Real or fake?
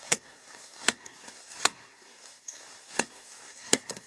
fake